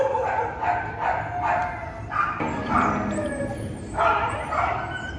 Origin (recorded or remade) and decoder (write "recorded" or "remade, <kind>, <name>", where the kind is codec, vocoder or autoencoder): recorded